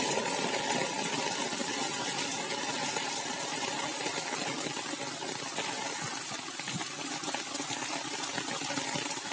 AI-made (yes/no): no